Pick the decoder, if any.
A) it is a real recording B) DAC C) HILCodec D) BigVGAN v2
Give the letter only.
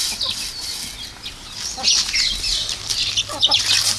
A